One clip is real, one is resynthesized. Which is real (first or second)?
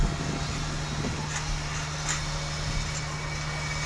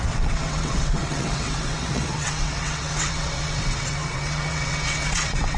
first